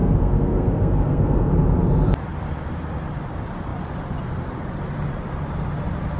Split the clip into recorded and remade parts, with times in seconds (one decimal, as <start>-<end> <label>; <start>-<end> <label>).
0.0-1.5 remade; 1.5-6.2 recorded